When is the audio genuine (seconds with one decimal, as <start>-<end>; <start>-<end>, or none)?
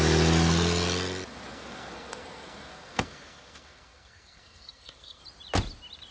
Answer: 0.0-1.5; 5.2-6.1